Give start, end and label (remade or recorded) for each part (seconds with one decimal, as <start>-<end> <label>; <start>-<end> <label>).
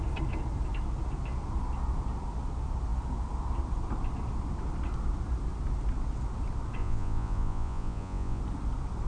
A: 0.0-6.8 recorded; 6.8-8.4 remade; 8.4-9.1 recorded